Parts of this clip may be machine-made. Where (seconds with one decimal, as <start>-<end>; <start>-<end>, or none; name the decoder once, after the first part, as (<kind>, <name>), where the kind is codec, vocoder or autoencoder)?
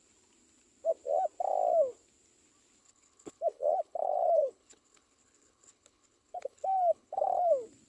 2.8-7.5 (codec, HILCodec)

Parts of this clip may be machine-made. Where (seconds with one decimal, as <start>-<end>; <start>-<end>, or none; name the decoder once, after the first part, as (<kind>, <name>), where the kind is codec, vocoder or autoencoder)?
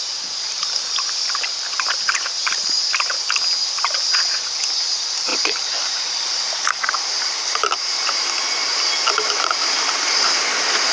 5.3-8.3 (vocoder, BigVGAN v2)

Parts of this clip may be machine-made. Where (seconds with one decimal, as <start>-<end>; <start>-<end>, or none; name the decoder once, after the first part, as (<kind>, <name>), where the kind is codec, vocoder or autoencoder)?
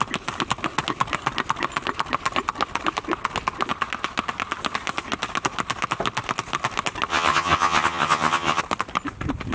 7.1-8.6 (vocoder, HiFi-GAN)